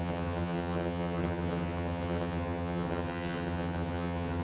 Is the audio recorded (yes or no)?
no